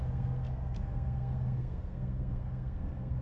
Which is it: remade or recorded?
remade